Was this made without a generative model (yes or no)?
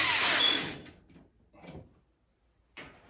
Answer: yes